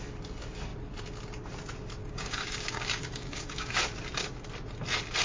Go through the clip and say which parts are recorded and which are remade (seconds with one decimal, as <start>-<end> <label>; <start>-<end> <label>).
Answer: 0.0-2.0 recorded; 2.0-3.8 remade; 3.8-5.2 recorded